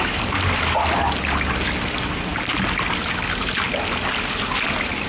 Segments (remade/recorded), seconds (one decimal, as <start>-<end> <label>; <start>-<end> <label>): 0.0-5.1 recorded